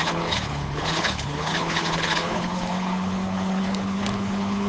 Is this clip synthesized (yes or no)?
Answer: yes